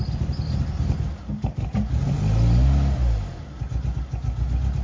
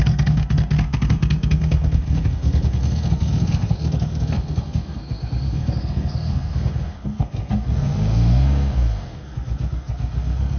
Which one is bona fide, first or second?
first